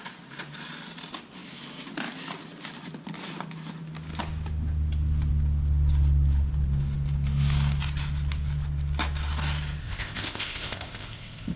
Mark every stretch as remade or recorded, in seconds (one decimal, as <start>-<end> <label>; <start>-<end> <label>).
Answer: 0.0-9.8 recorded; 9.8-11.6 remade